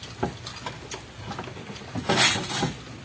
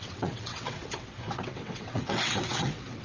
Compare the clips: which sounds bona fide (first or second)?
first